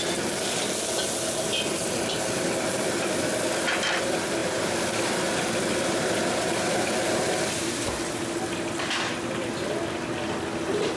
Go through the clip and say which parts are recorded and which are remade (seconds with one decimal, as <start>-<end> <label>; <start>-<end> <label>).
0.0-11.0 recorded